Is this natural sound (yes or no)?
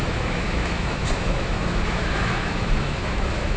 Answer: no